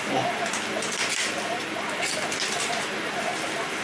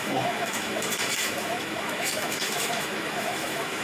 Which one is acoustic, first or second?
first